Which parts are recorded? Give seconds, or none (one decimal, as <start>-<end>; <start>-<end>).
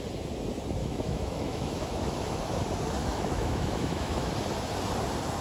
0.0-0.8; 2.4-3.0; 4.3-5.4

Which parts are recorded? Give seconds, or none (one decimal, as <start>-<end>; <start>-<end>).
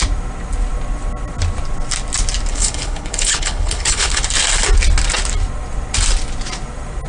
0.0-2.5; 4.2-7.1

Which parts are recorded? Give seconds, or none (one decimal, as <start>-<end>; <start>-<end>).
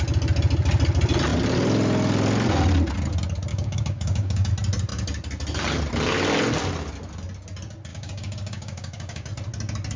0.0-3.5; 4.5-7.9; 9.3-10.0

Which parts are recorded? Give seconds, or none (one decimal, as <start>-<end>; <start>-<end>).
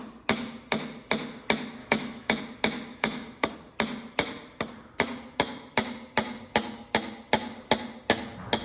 0.0-1.8; 2.4-2.9; 3.5-8.6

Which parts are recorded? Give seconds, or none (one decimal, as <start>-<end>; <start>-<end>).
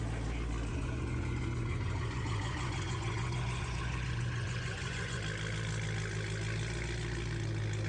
0.0-0.7; 5.2-7.9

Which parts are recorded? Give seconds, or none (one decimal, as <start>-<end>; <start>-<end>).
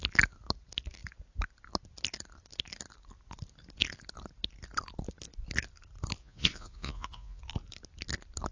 0.0-6.2; 7.4-8.5